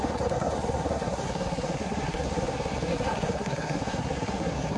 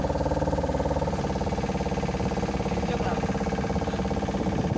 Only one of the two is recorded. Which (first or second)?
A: second